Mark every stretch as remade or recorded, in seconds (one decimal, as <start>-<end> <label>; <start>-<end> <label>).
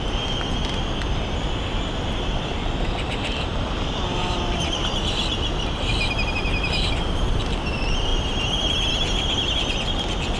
0.0-4.1 recorded; 4.1-7.3 remade; 7.3-10.4 recorded